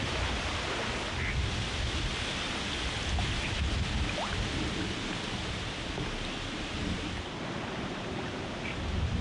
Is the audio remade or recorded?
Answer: recorded